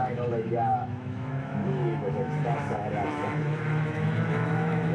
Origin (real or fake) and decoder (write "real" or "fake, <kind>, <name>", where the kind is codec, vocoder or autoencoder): fake, autoencoder, DAC-VAE